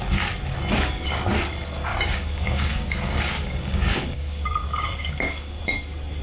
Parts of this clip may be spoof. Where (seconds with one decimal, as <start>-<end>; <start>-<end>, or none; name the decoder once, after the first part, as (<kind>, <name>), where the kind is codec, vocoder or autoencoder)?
0.7-1.3 (codec, DAC); 1.9-5.6